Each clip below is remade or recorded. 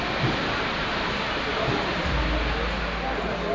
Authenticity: recorded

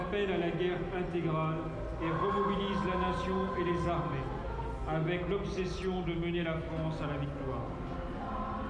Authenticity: recorded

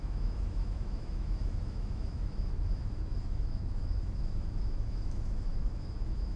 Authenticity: remade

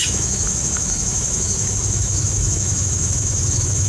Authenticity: remade